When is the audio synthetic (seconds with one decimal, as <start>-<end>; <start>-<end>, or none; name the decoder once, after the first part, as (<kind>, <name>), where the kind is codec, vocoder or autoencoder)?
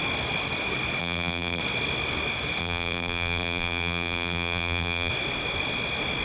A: 1.0-1.6 (vocoder, BigVGAN v2); 2.6-5.1